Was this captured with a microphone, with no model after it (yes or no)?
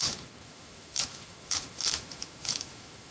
no